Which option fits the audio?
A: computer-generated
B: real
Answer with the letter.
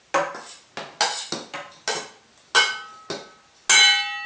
B